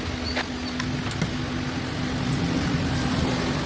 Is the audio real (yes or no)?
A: yes